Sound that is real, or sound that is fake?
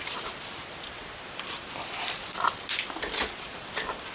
fake